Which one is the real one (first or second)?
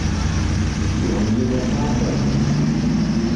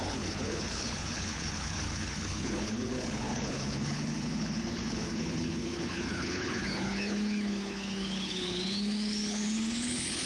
first